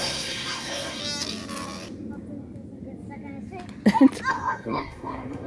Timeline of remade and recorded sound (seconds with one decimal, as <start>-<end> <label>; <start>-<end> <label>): 0.0-1.0 remade; 1.0-4.3 recorded; 4.3-5.5 remade